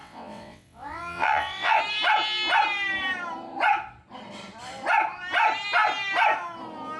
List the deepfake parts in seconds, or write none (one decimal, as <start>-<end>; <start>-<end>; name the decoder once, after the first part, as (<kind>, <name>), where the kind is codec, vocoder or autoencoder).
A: 0.0-1.8 (vocoder, WaveNeXt)